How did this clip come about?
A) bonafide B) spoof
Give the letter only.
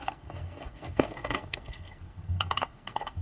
B